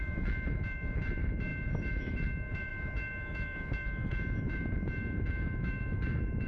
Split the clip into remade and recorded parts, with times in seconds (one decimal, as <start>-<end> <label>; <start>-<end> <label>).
0.0-6.5 remade